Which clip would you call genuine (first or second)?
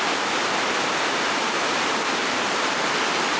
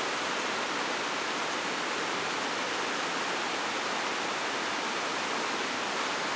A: second